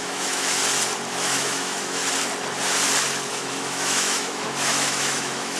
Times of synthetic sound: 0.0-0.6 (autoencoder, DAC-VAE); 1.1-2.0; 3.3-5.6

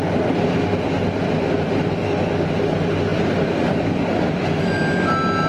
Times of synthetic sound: 3.1-3.9 (vocoder, BigVGAN v2)

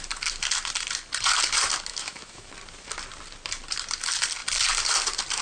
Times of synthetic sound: 1.9-2.5 (autoencoder, DAC-VAE)

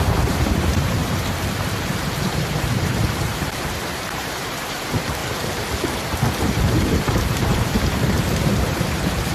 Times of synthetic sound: 0.0-1.0 (vocoder, BigVGAN v2); 2.3-5.2; 6.4-9.3

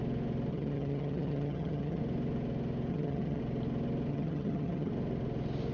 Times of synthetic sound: 0.5-2.0 (vocoder, HiFi-GAN); 2.9-3.4; 4.1-4.9

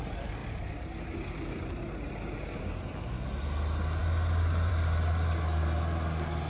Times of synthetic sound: none

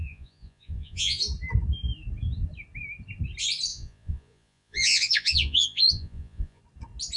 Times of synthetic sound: 0.0-1.2 (vocoder, Vocos); 3.7-6.6

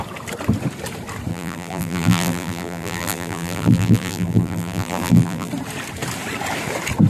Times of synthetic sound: 1.3-5.5 (vocoder, BigVGAN v2)